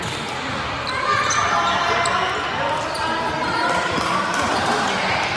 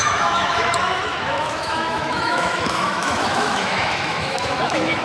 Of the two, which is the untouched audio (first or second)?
first